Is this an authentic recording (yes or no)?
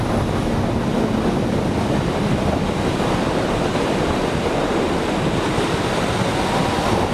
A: yes